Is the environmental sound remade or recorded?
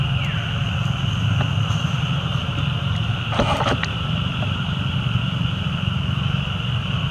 recorded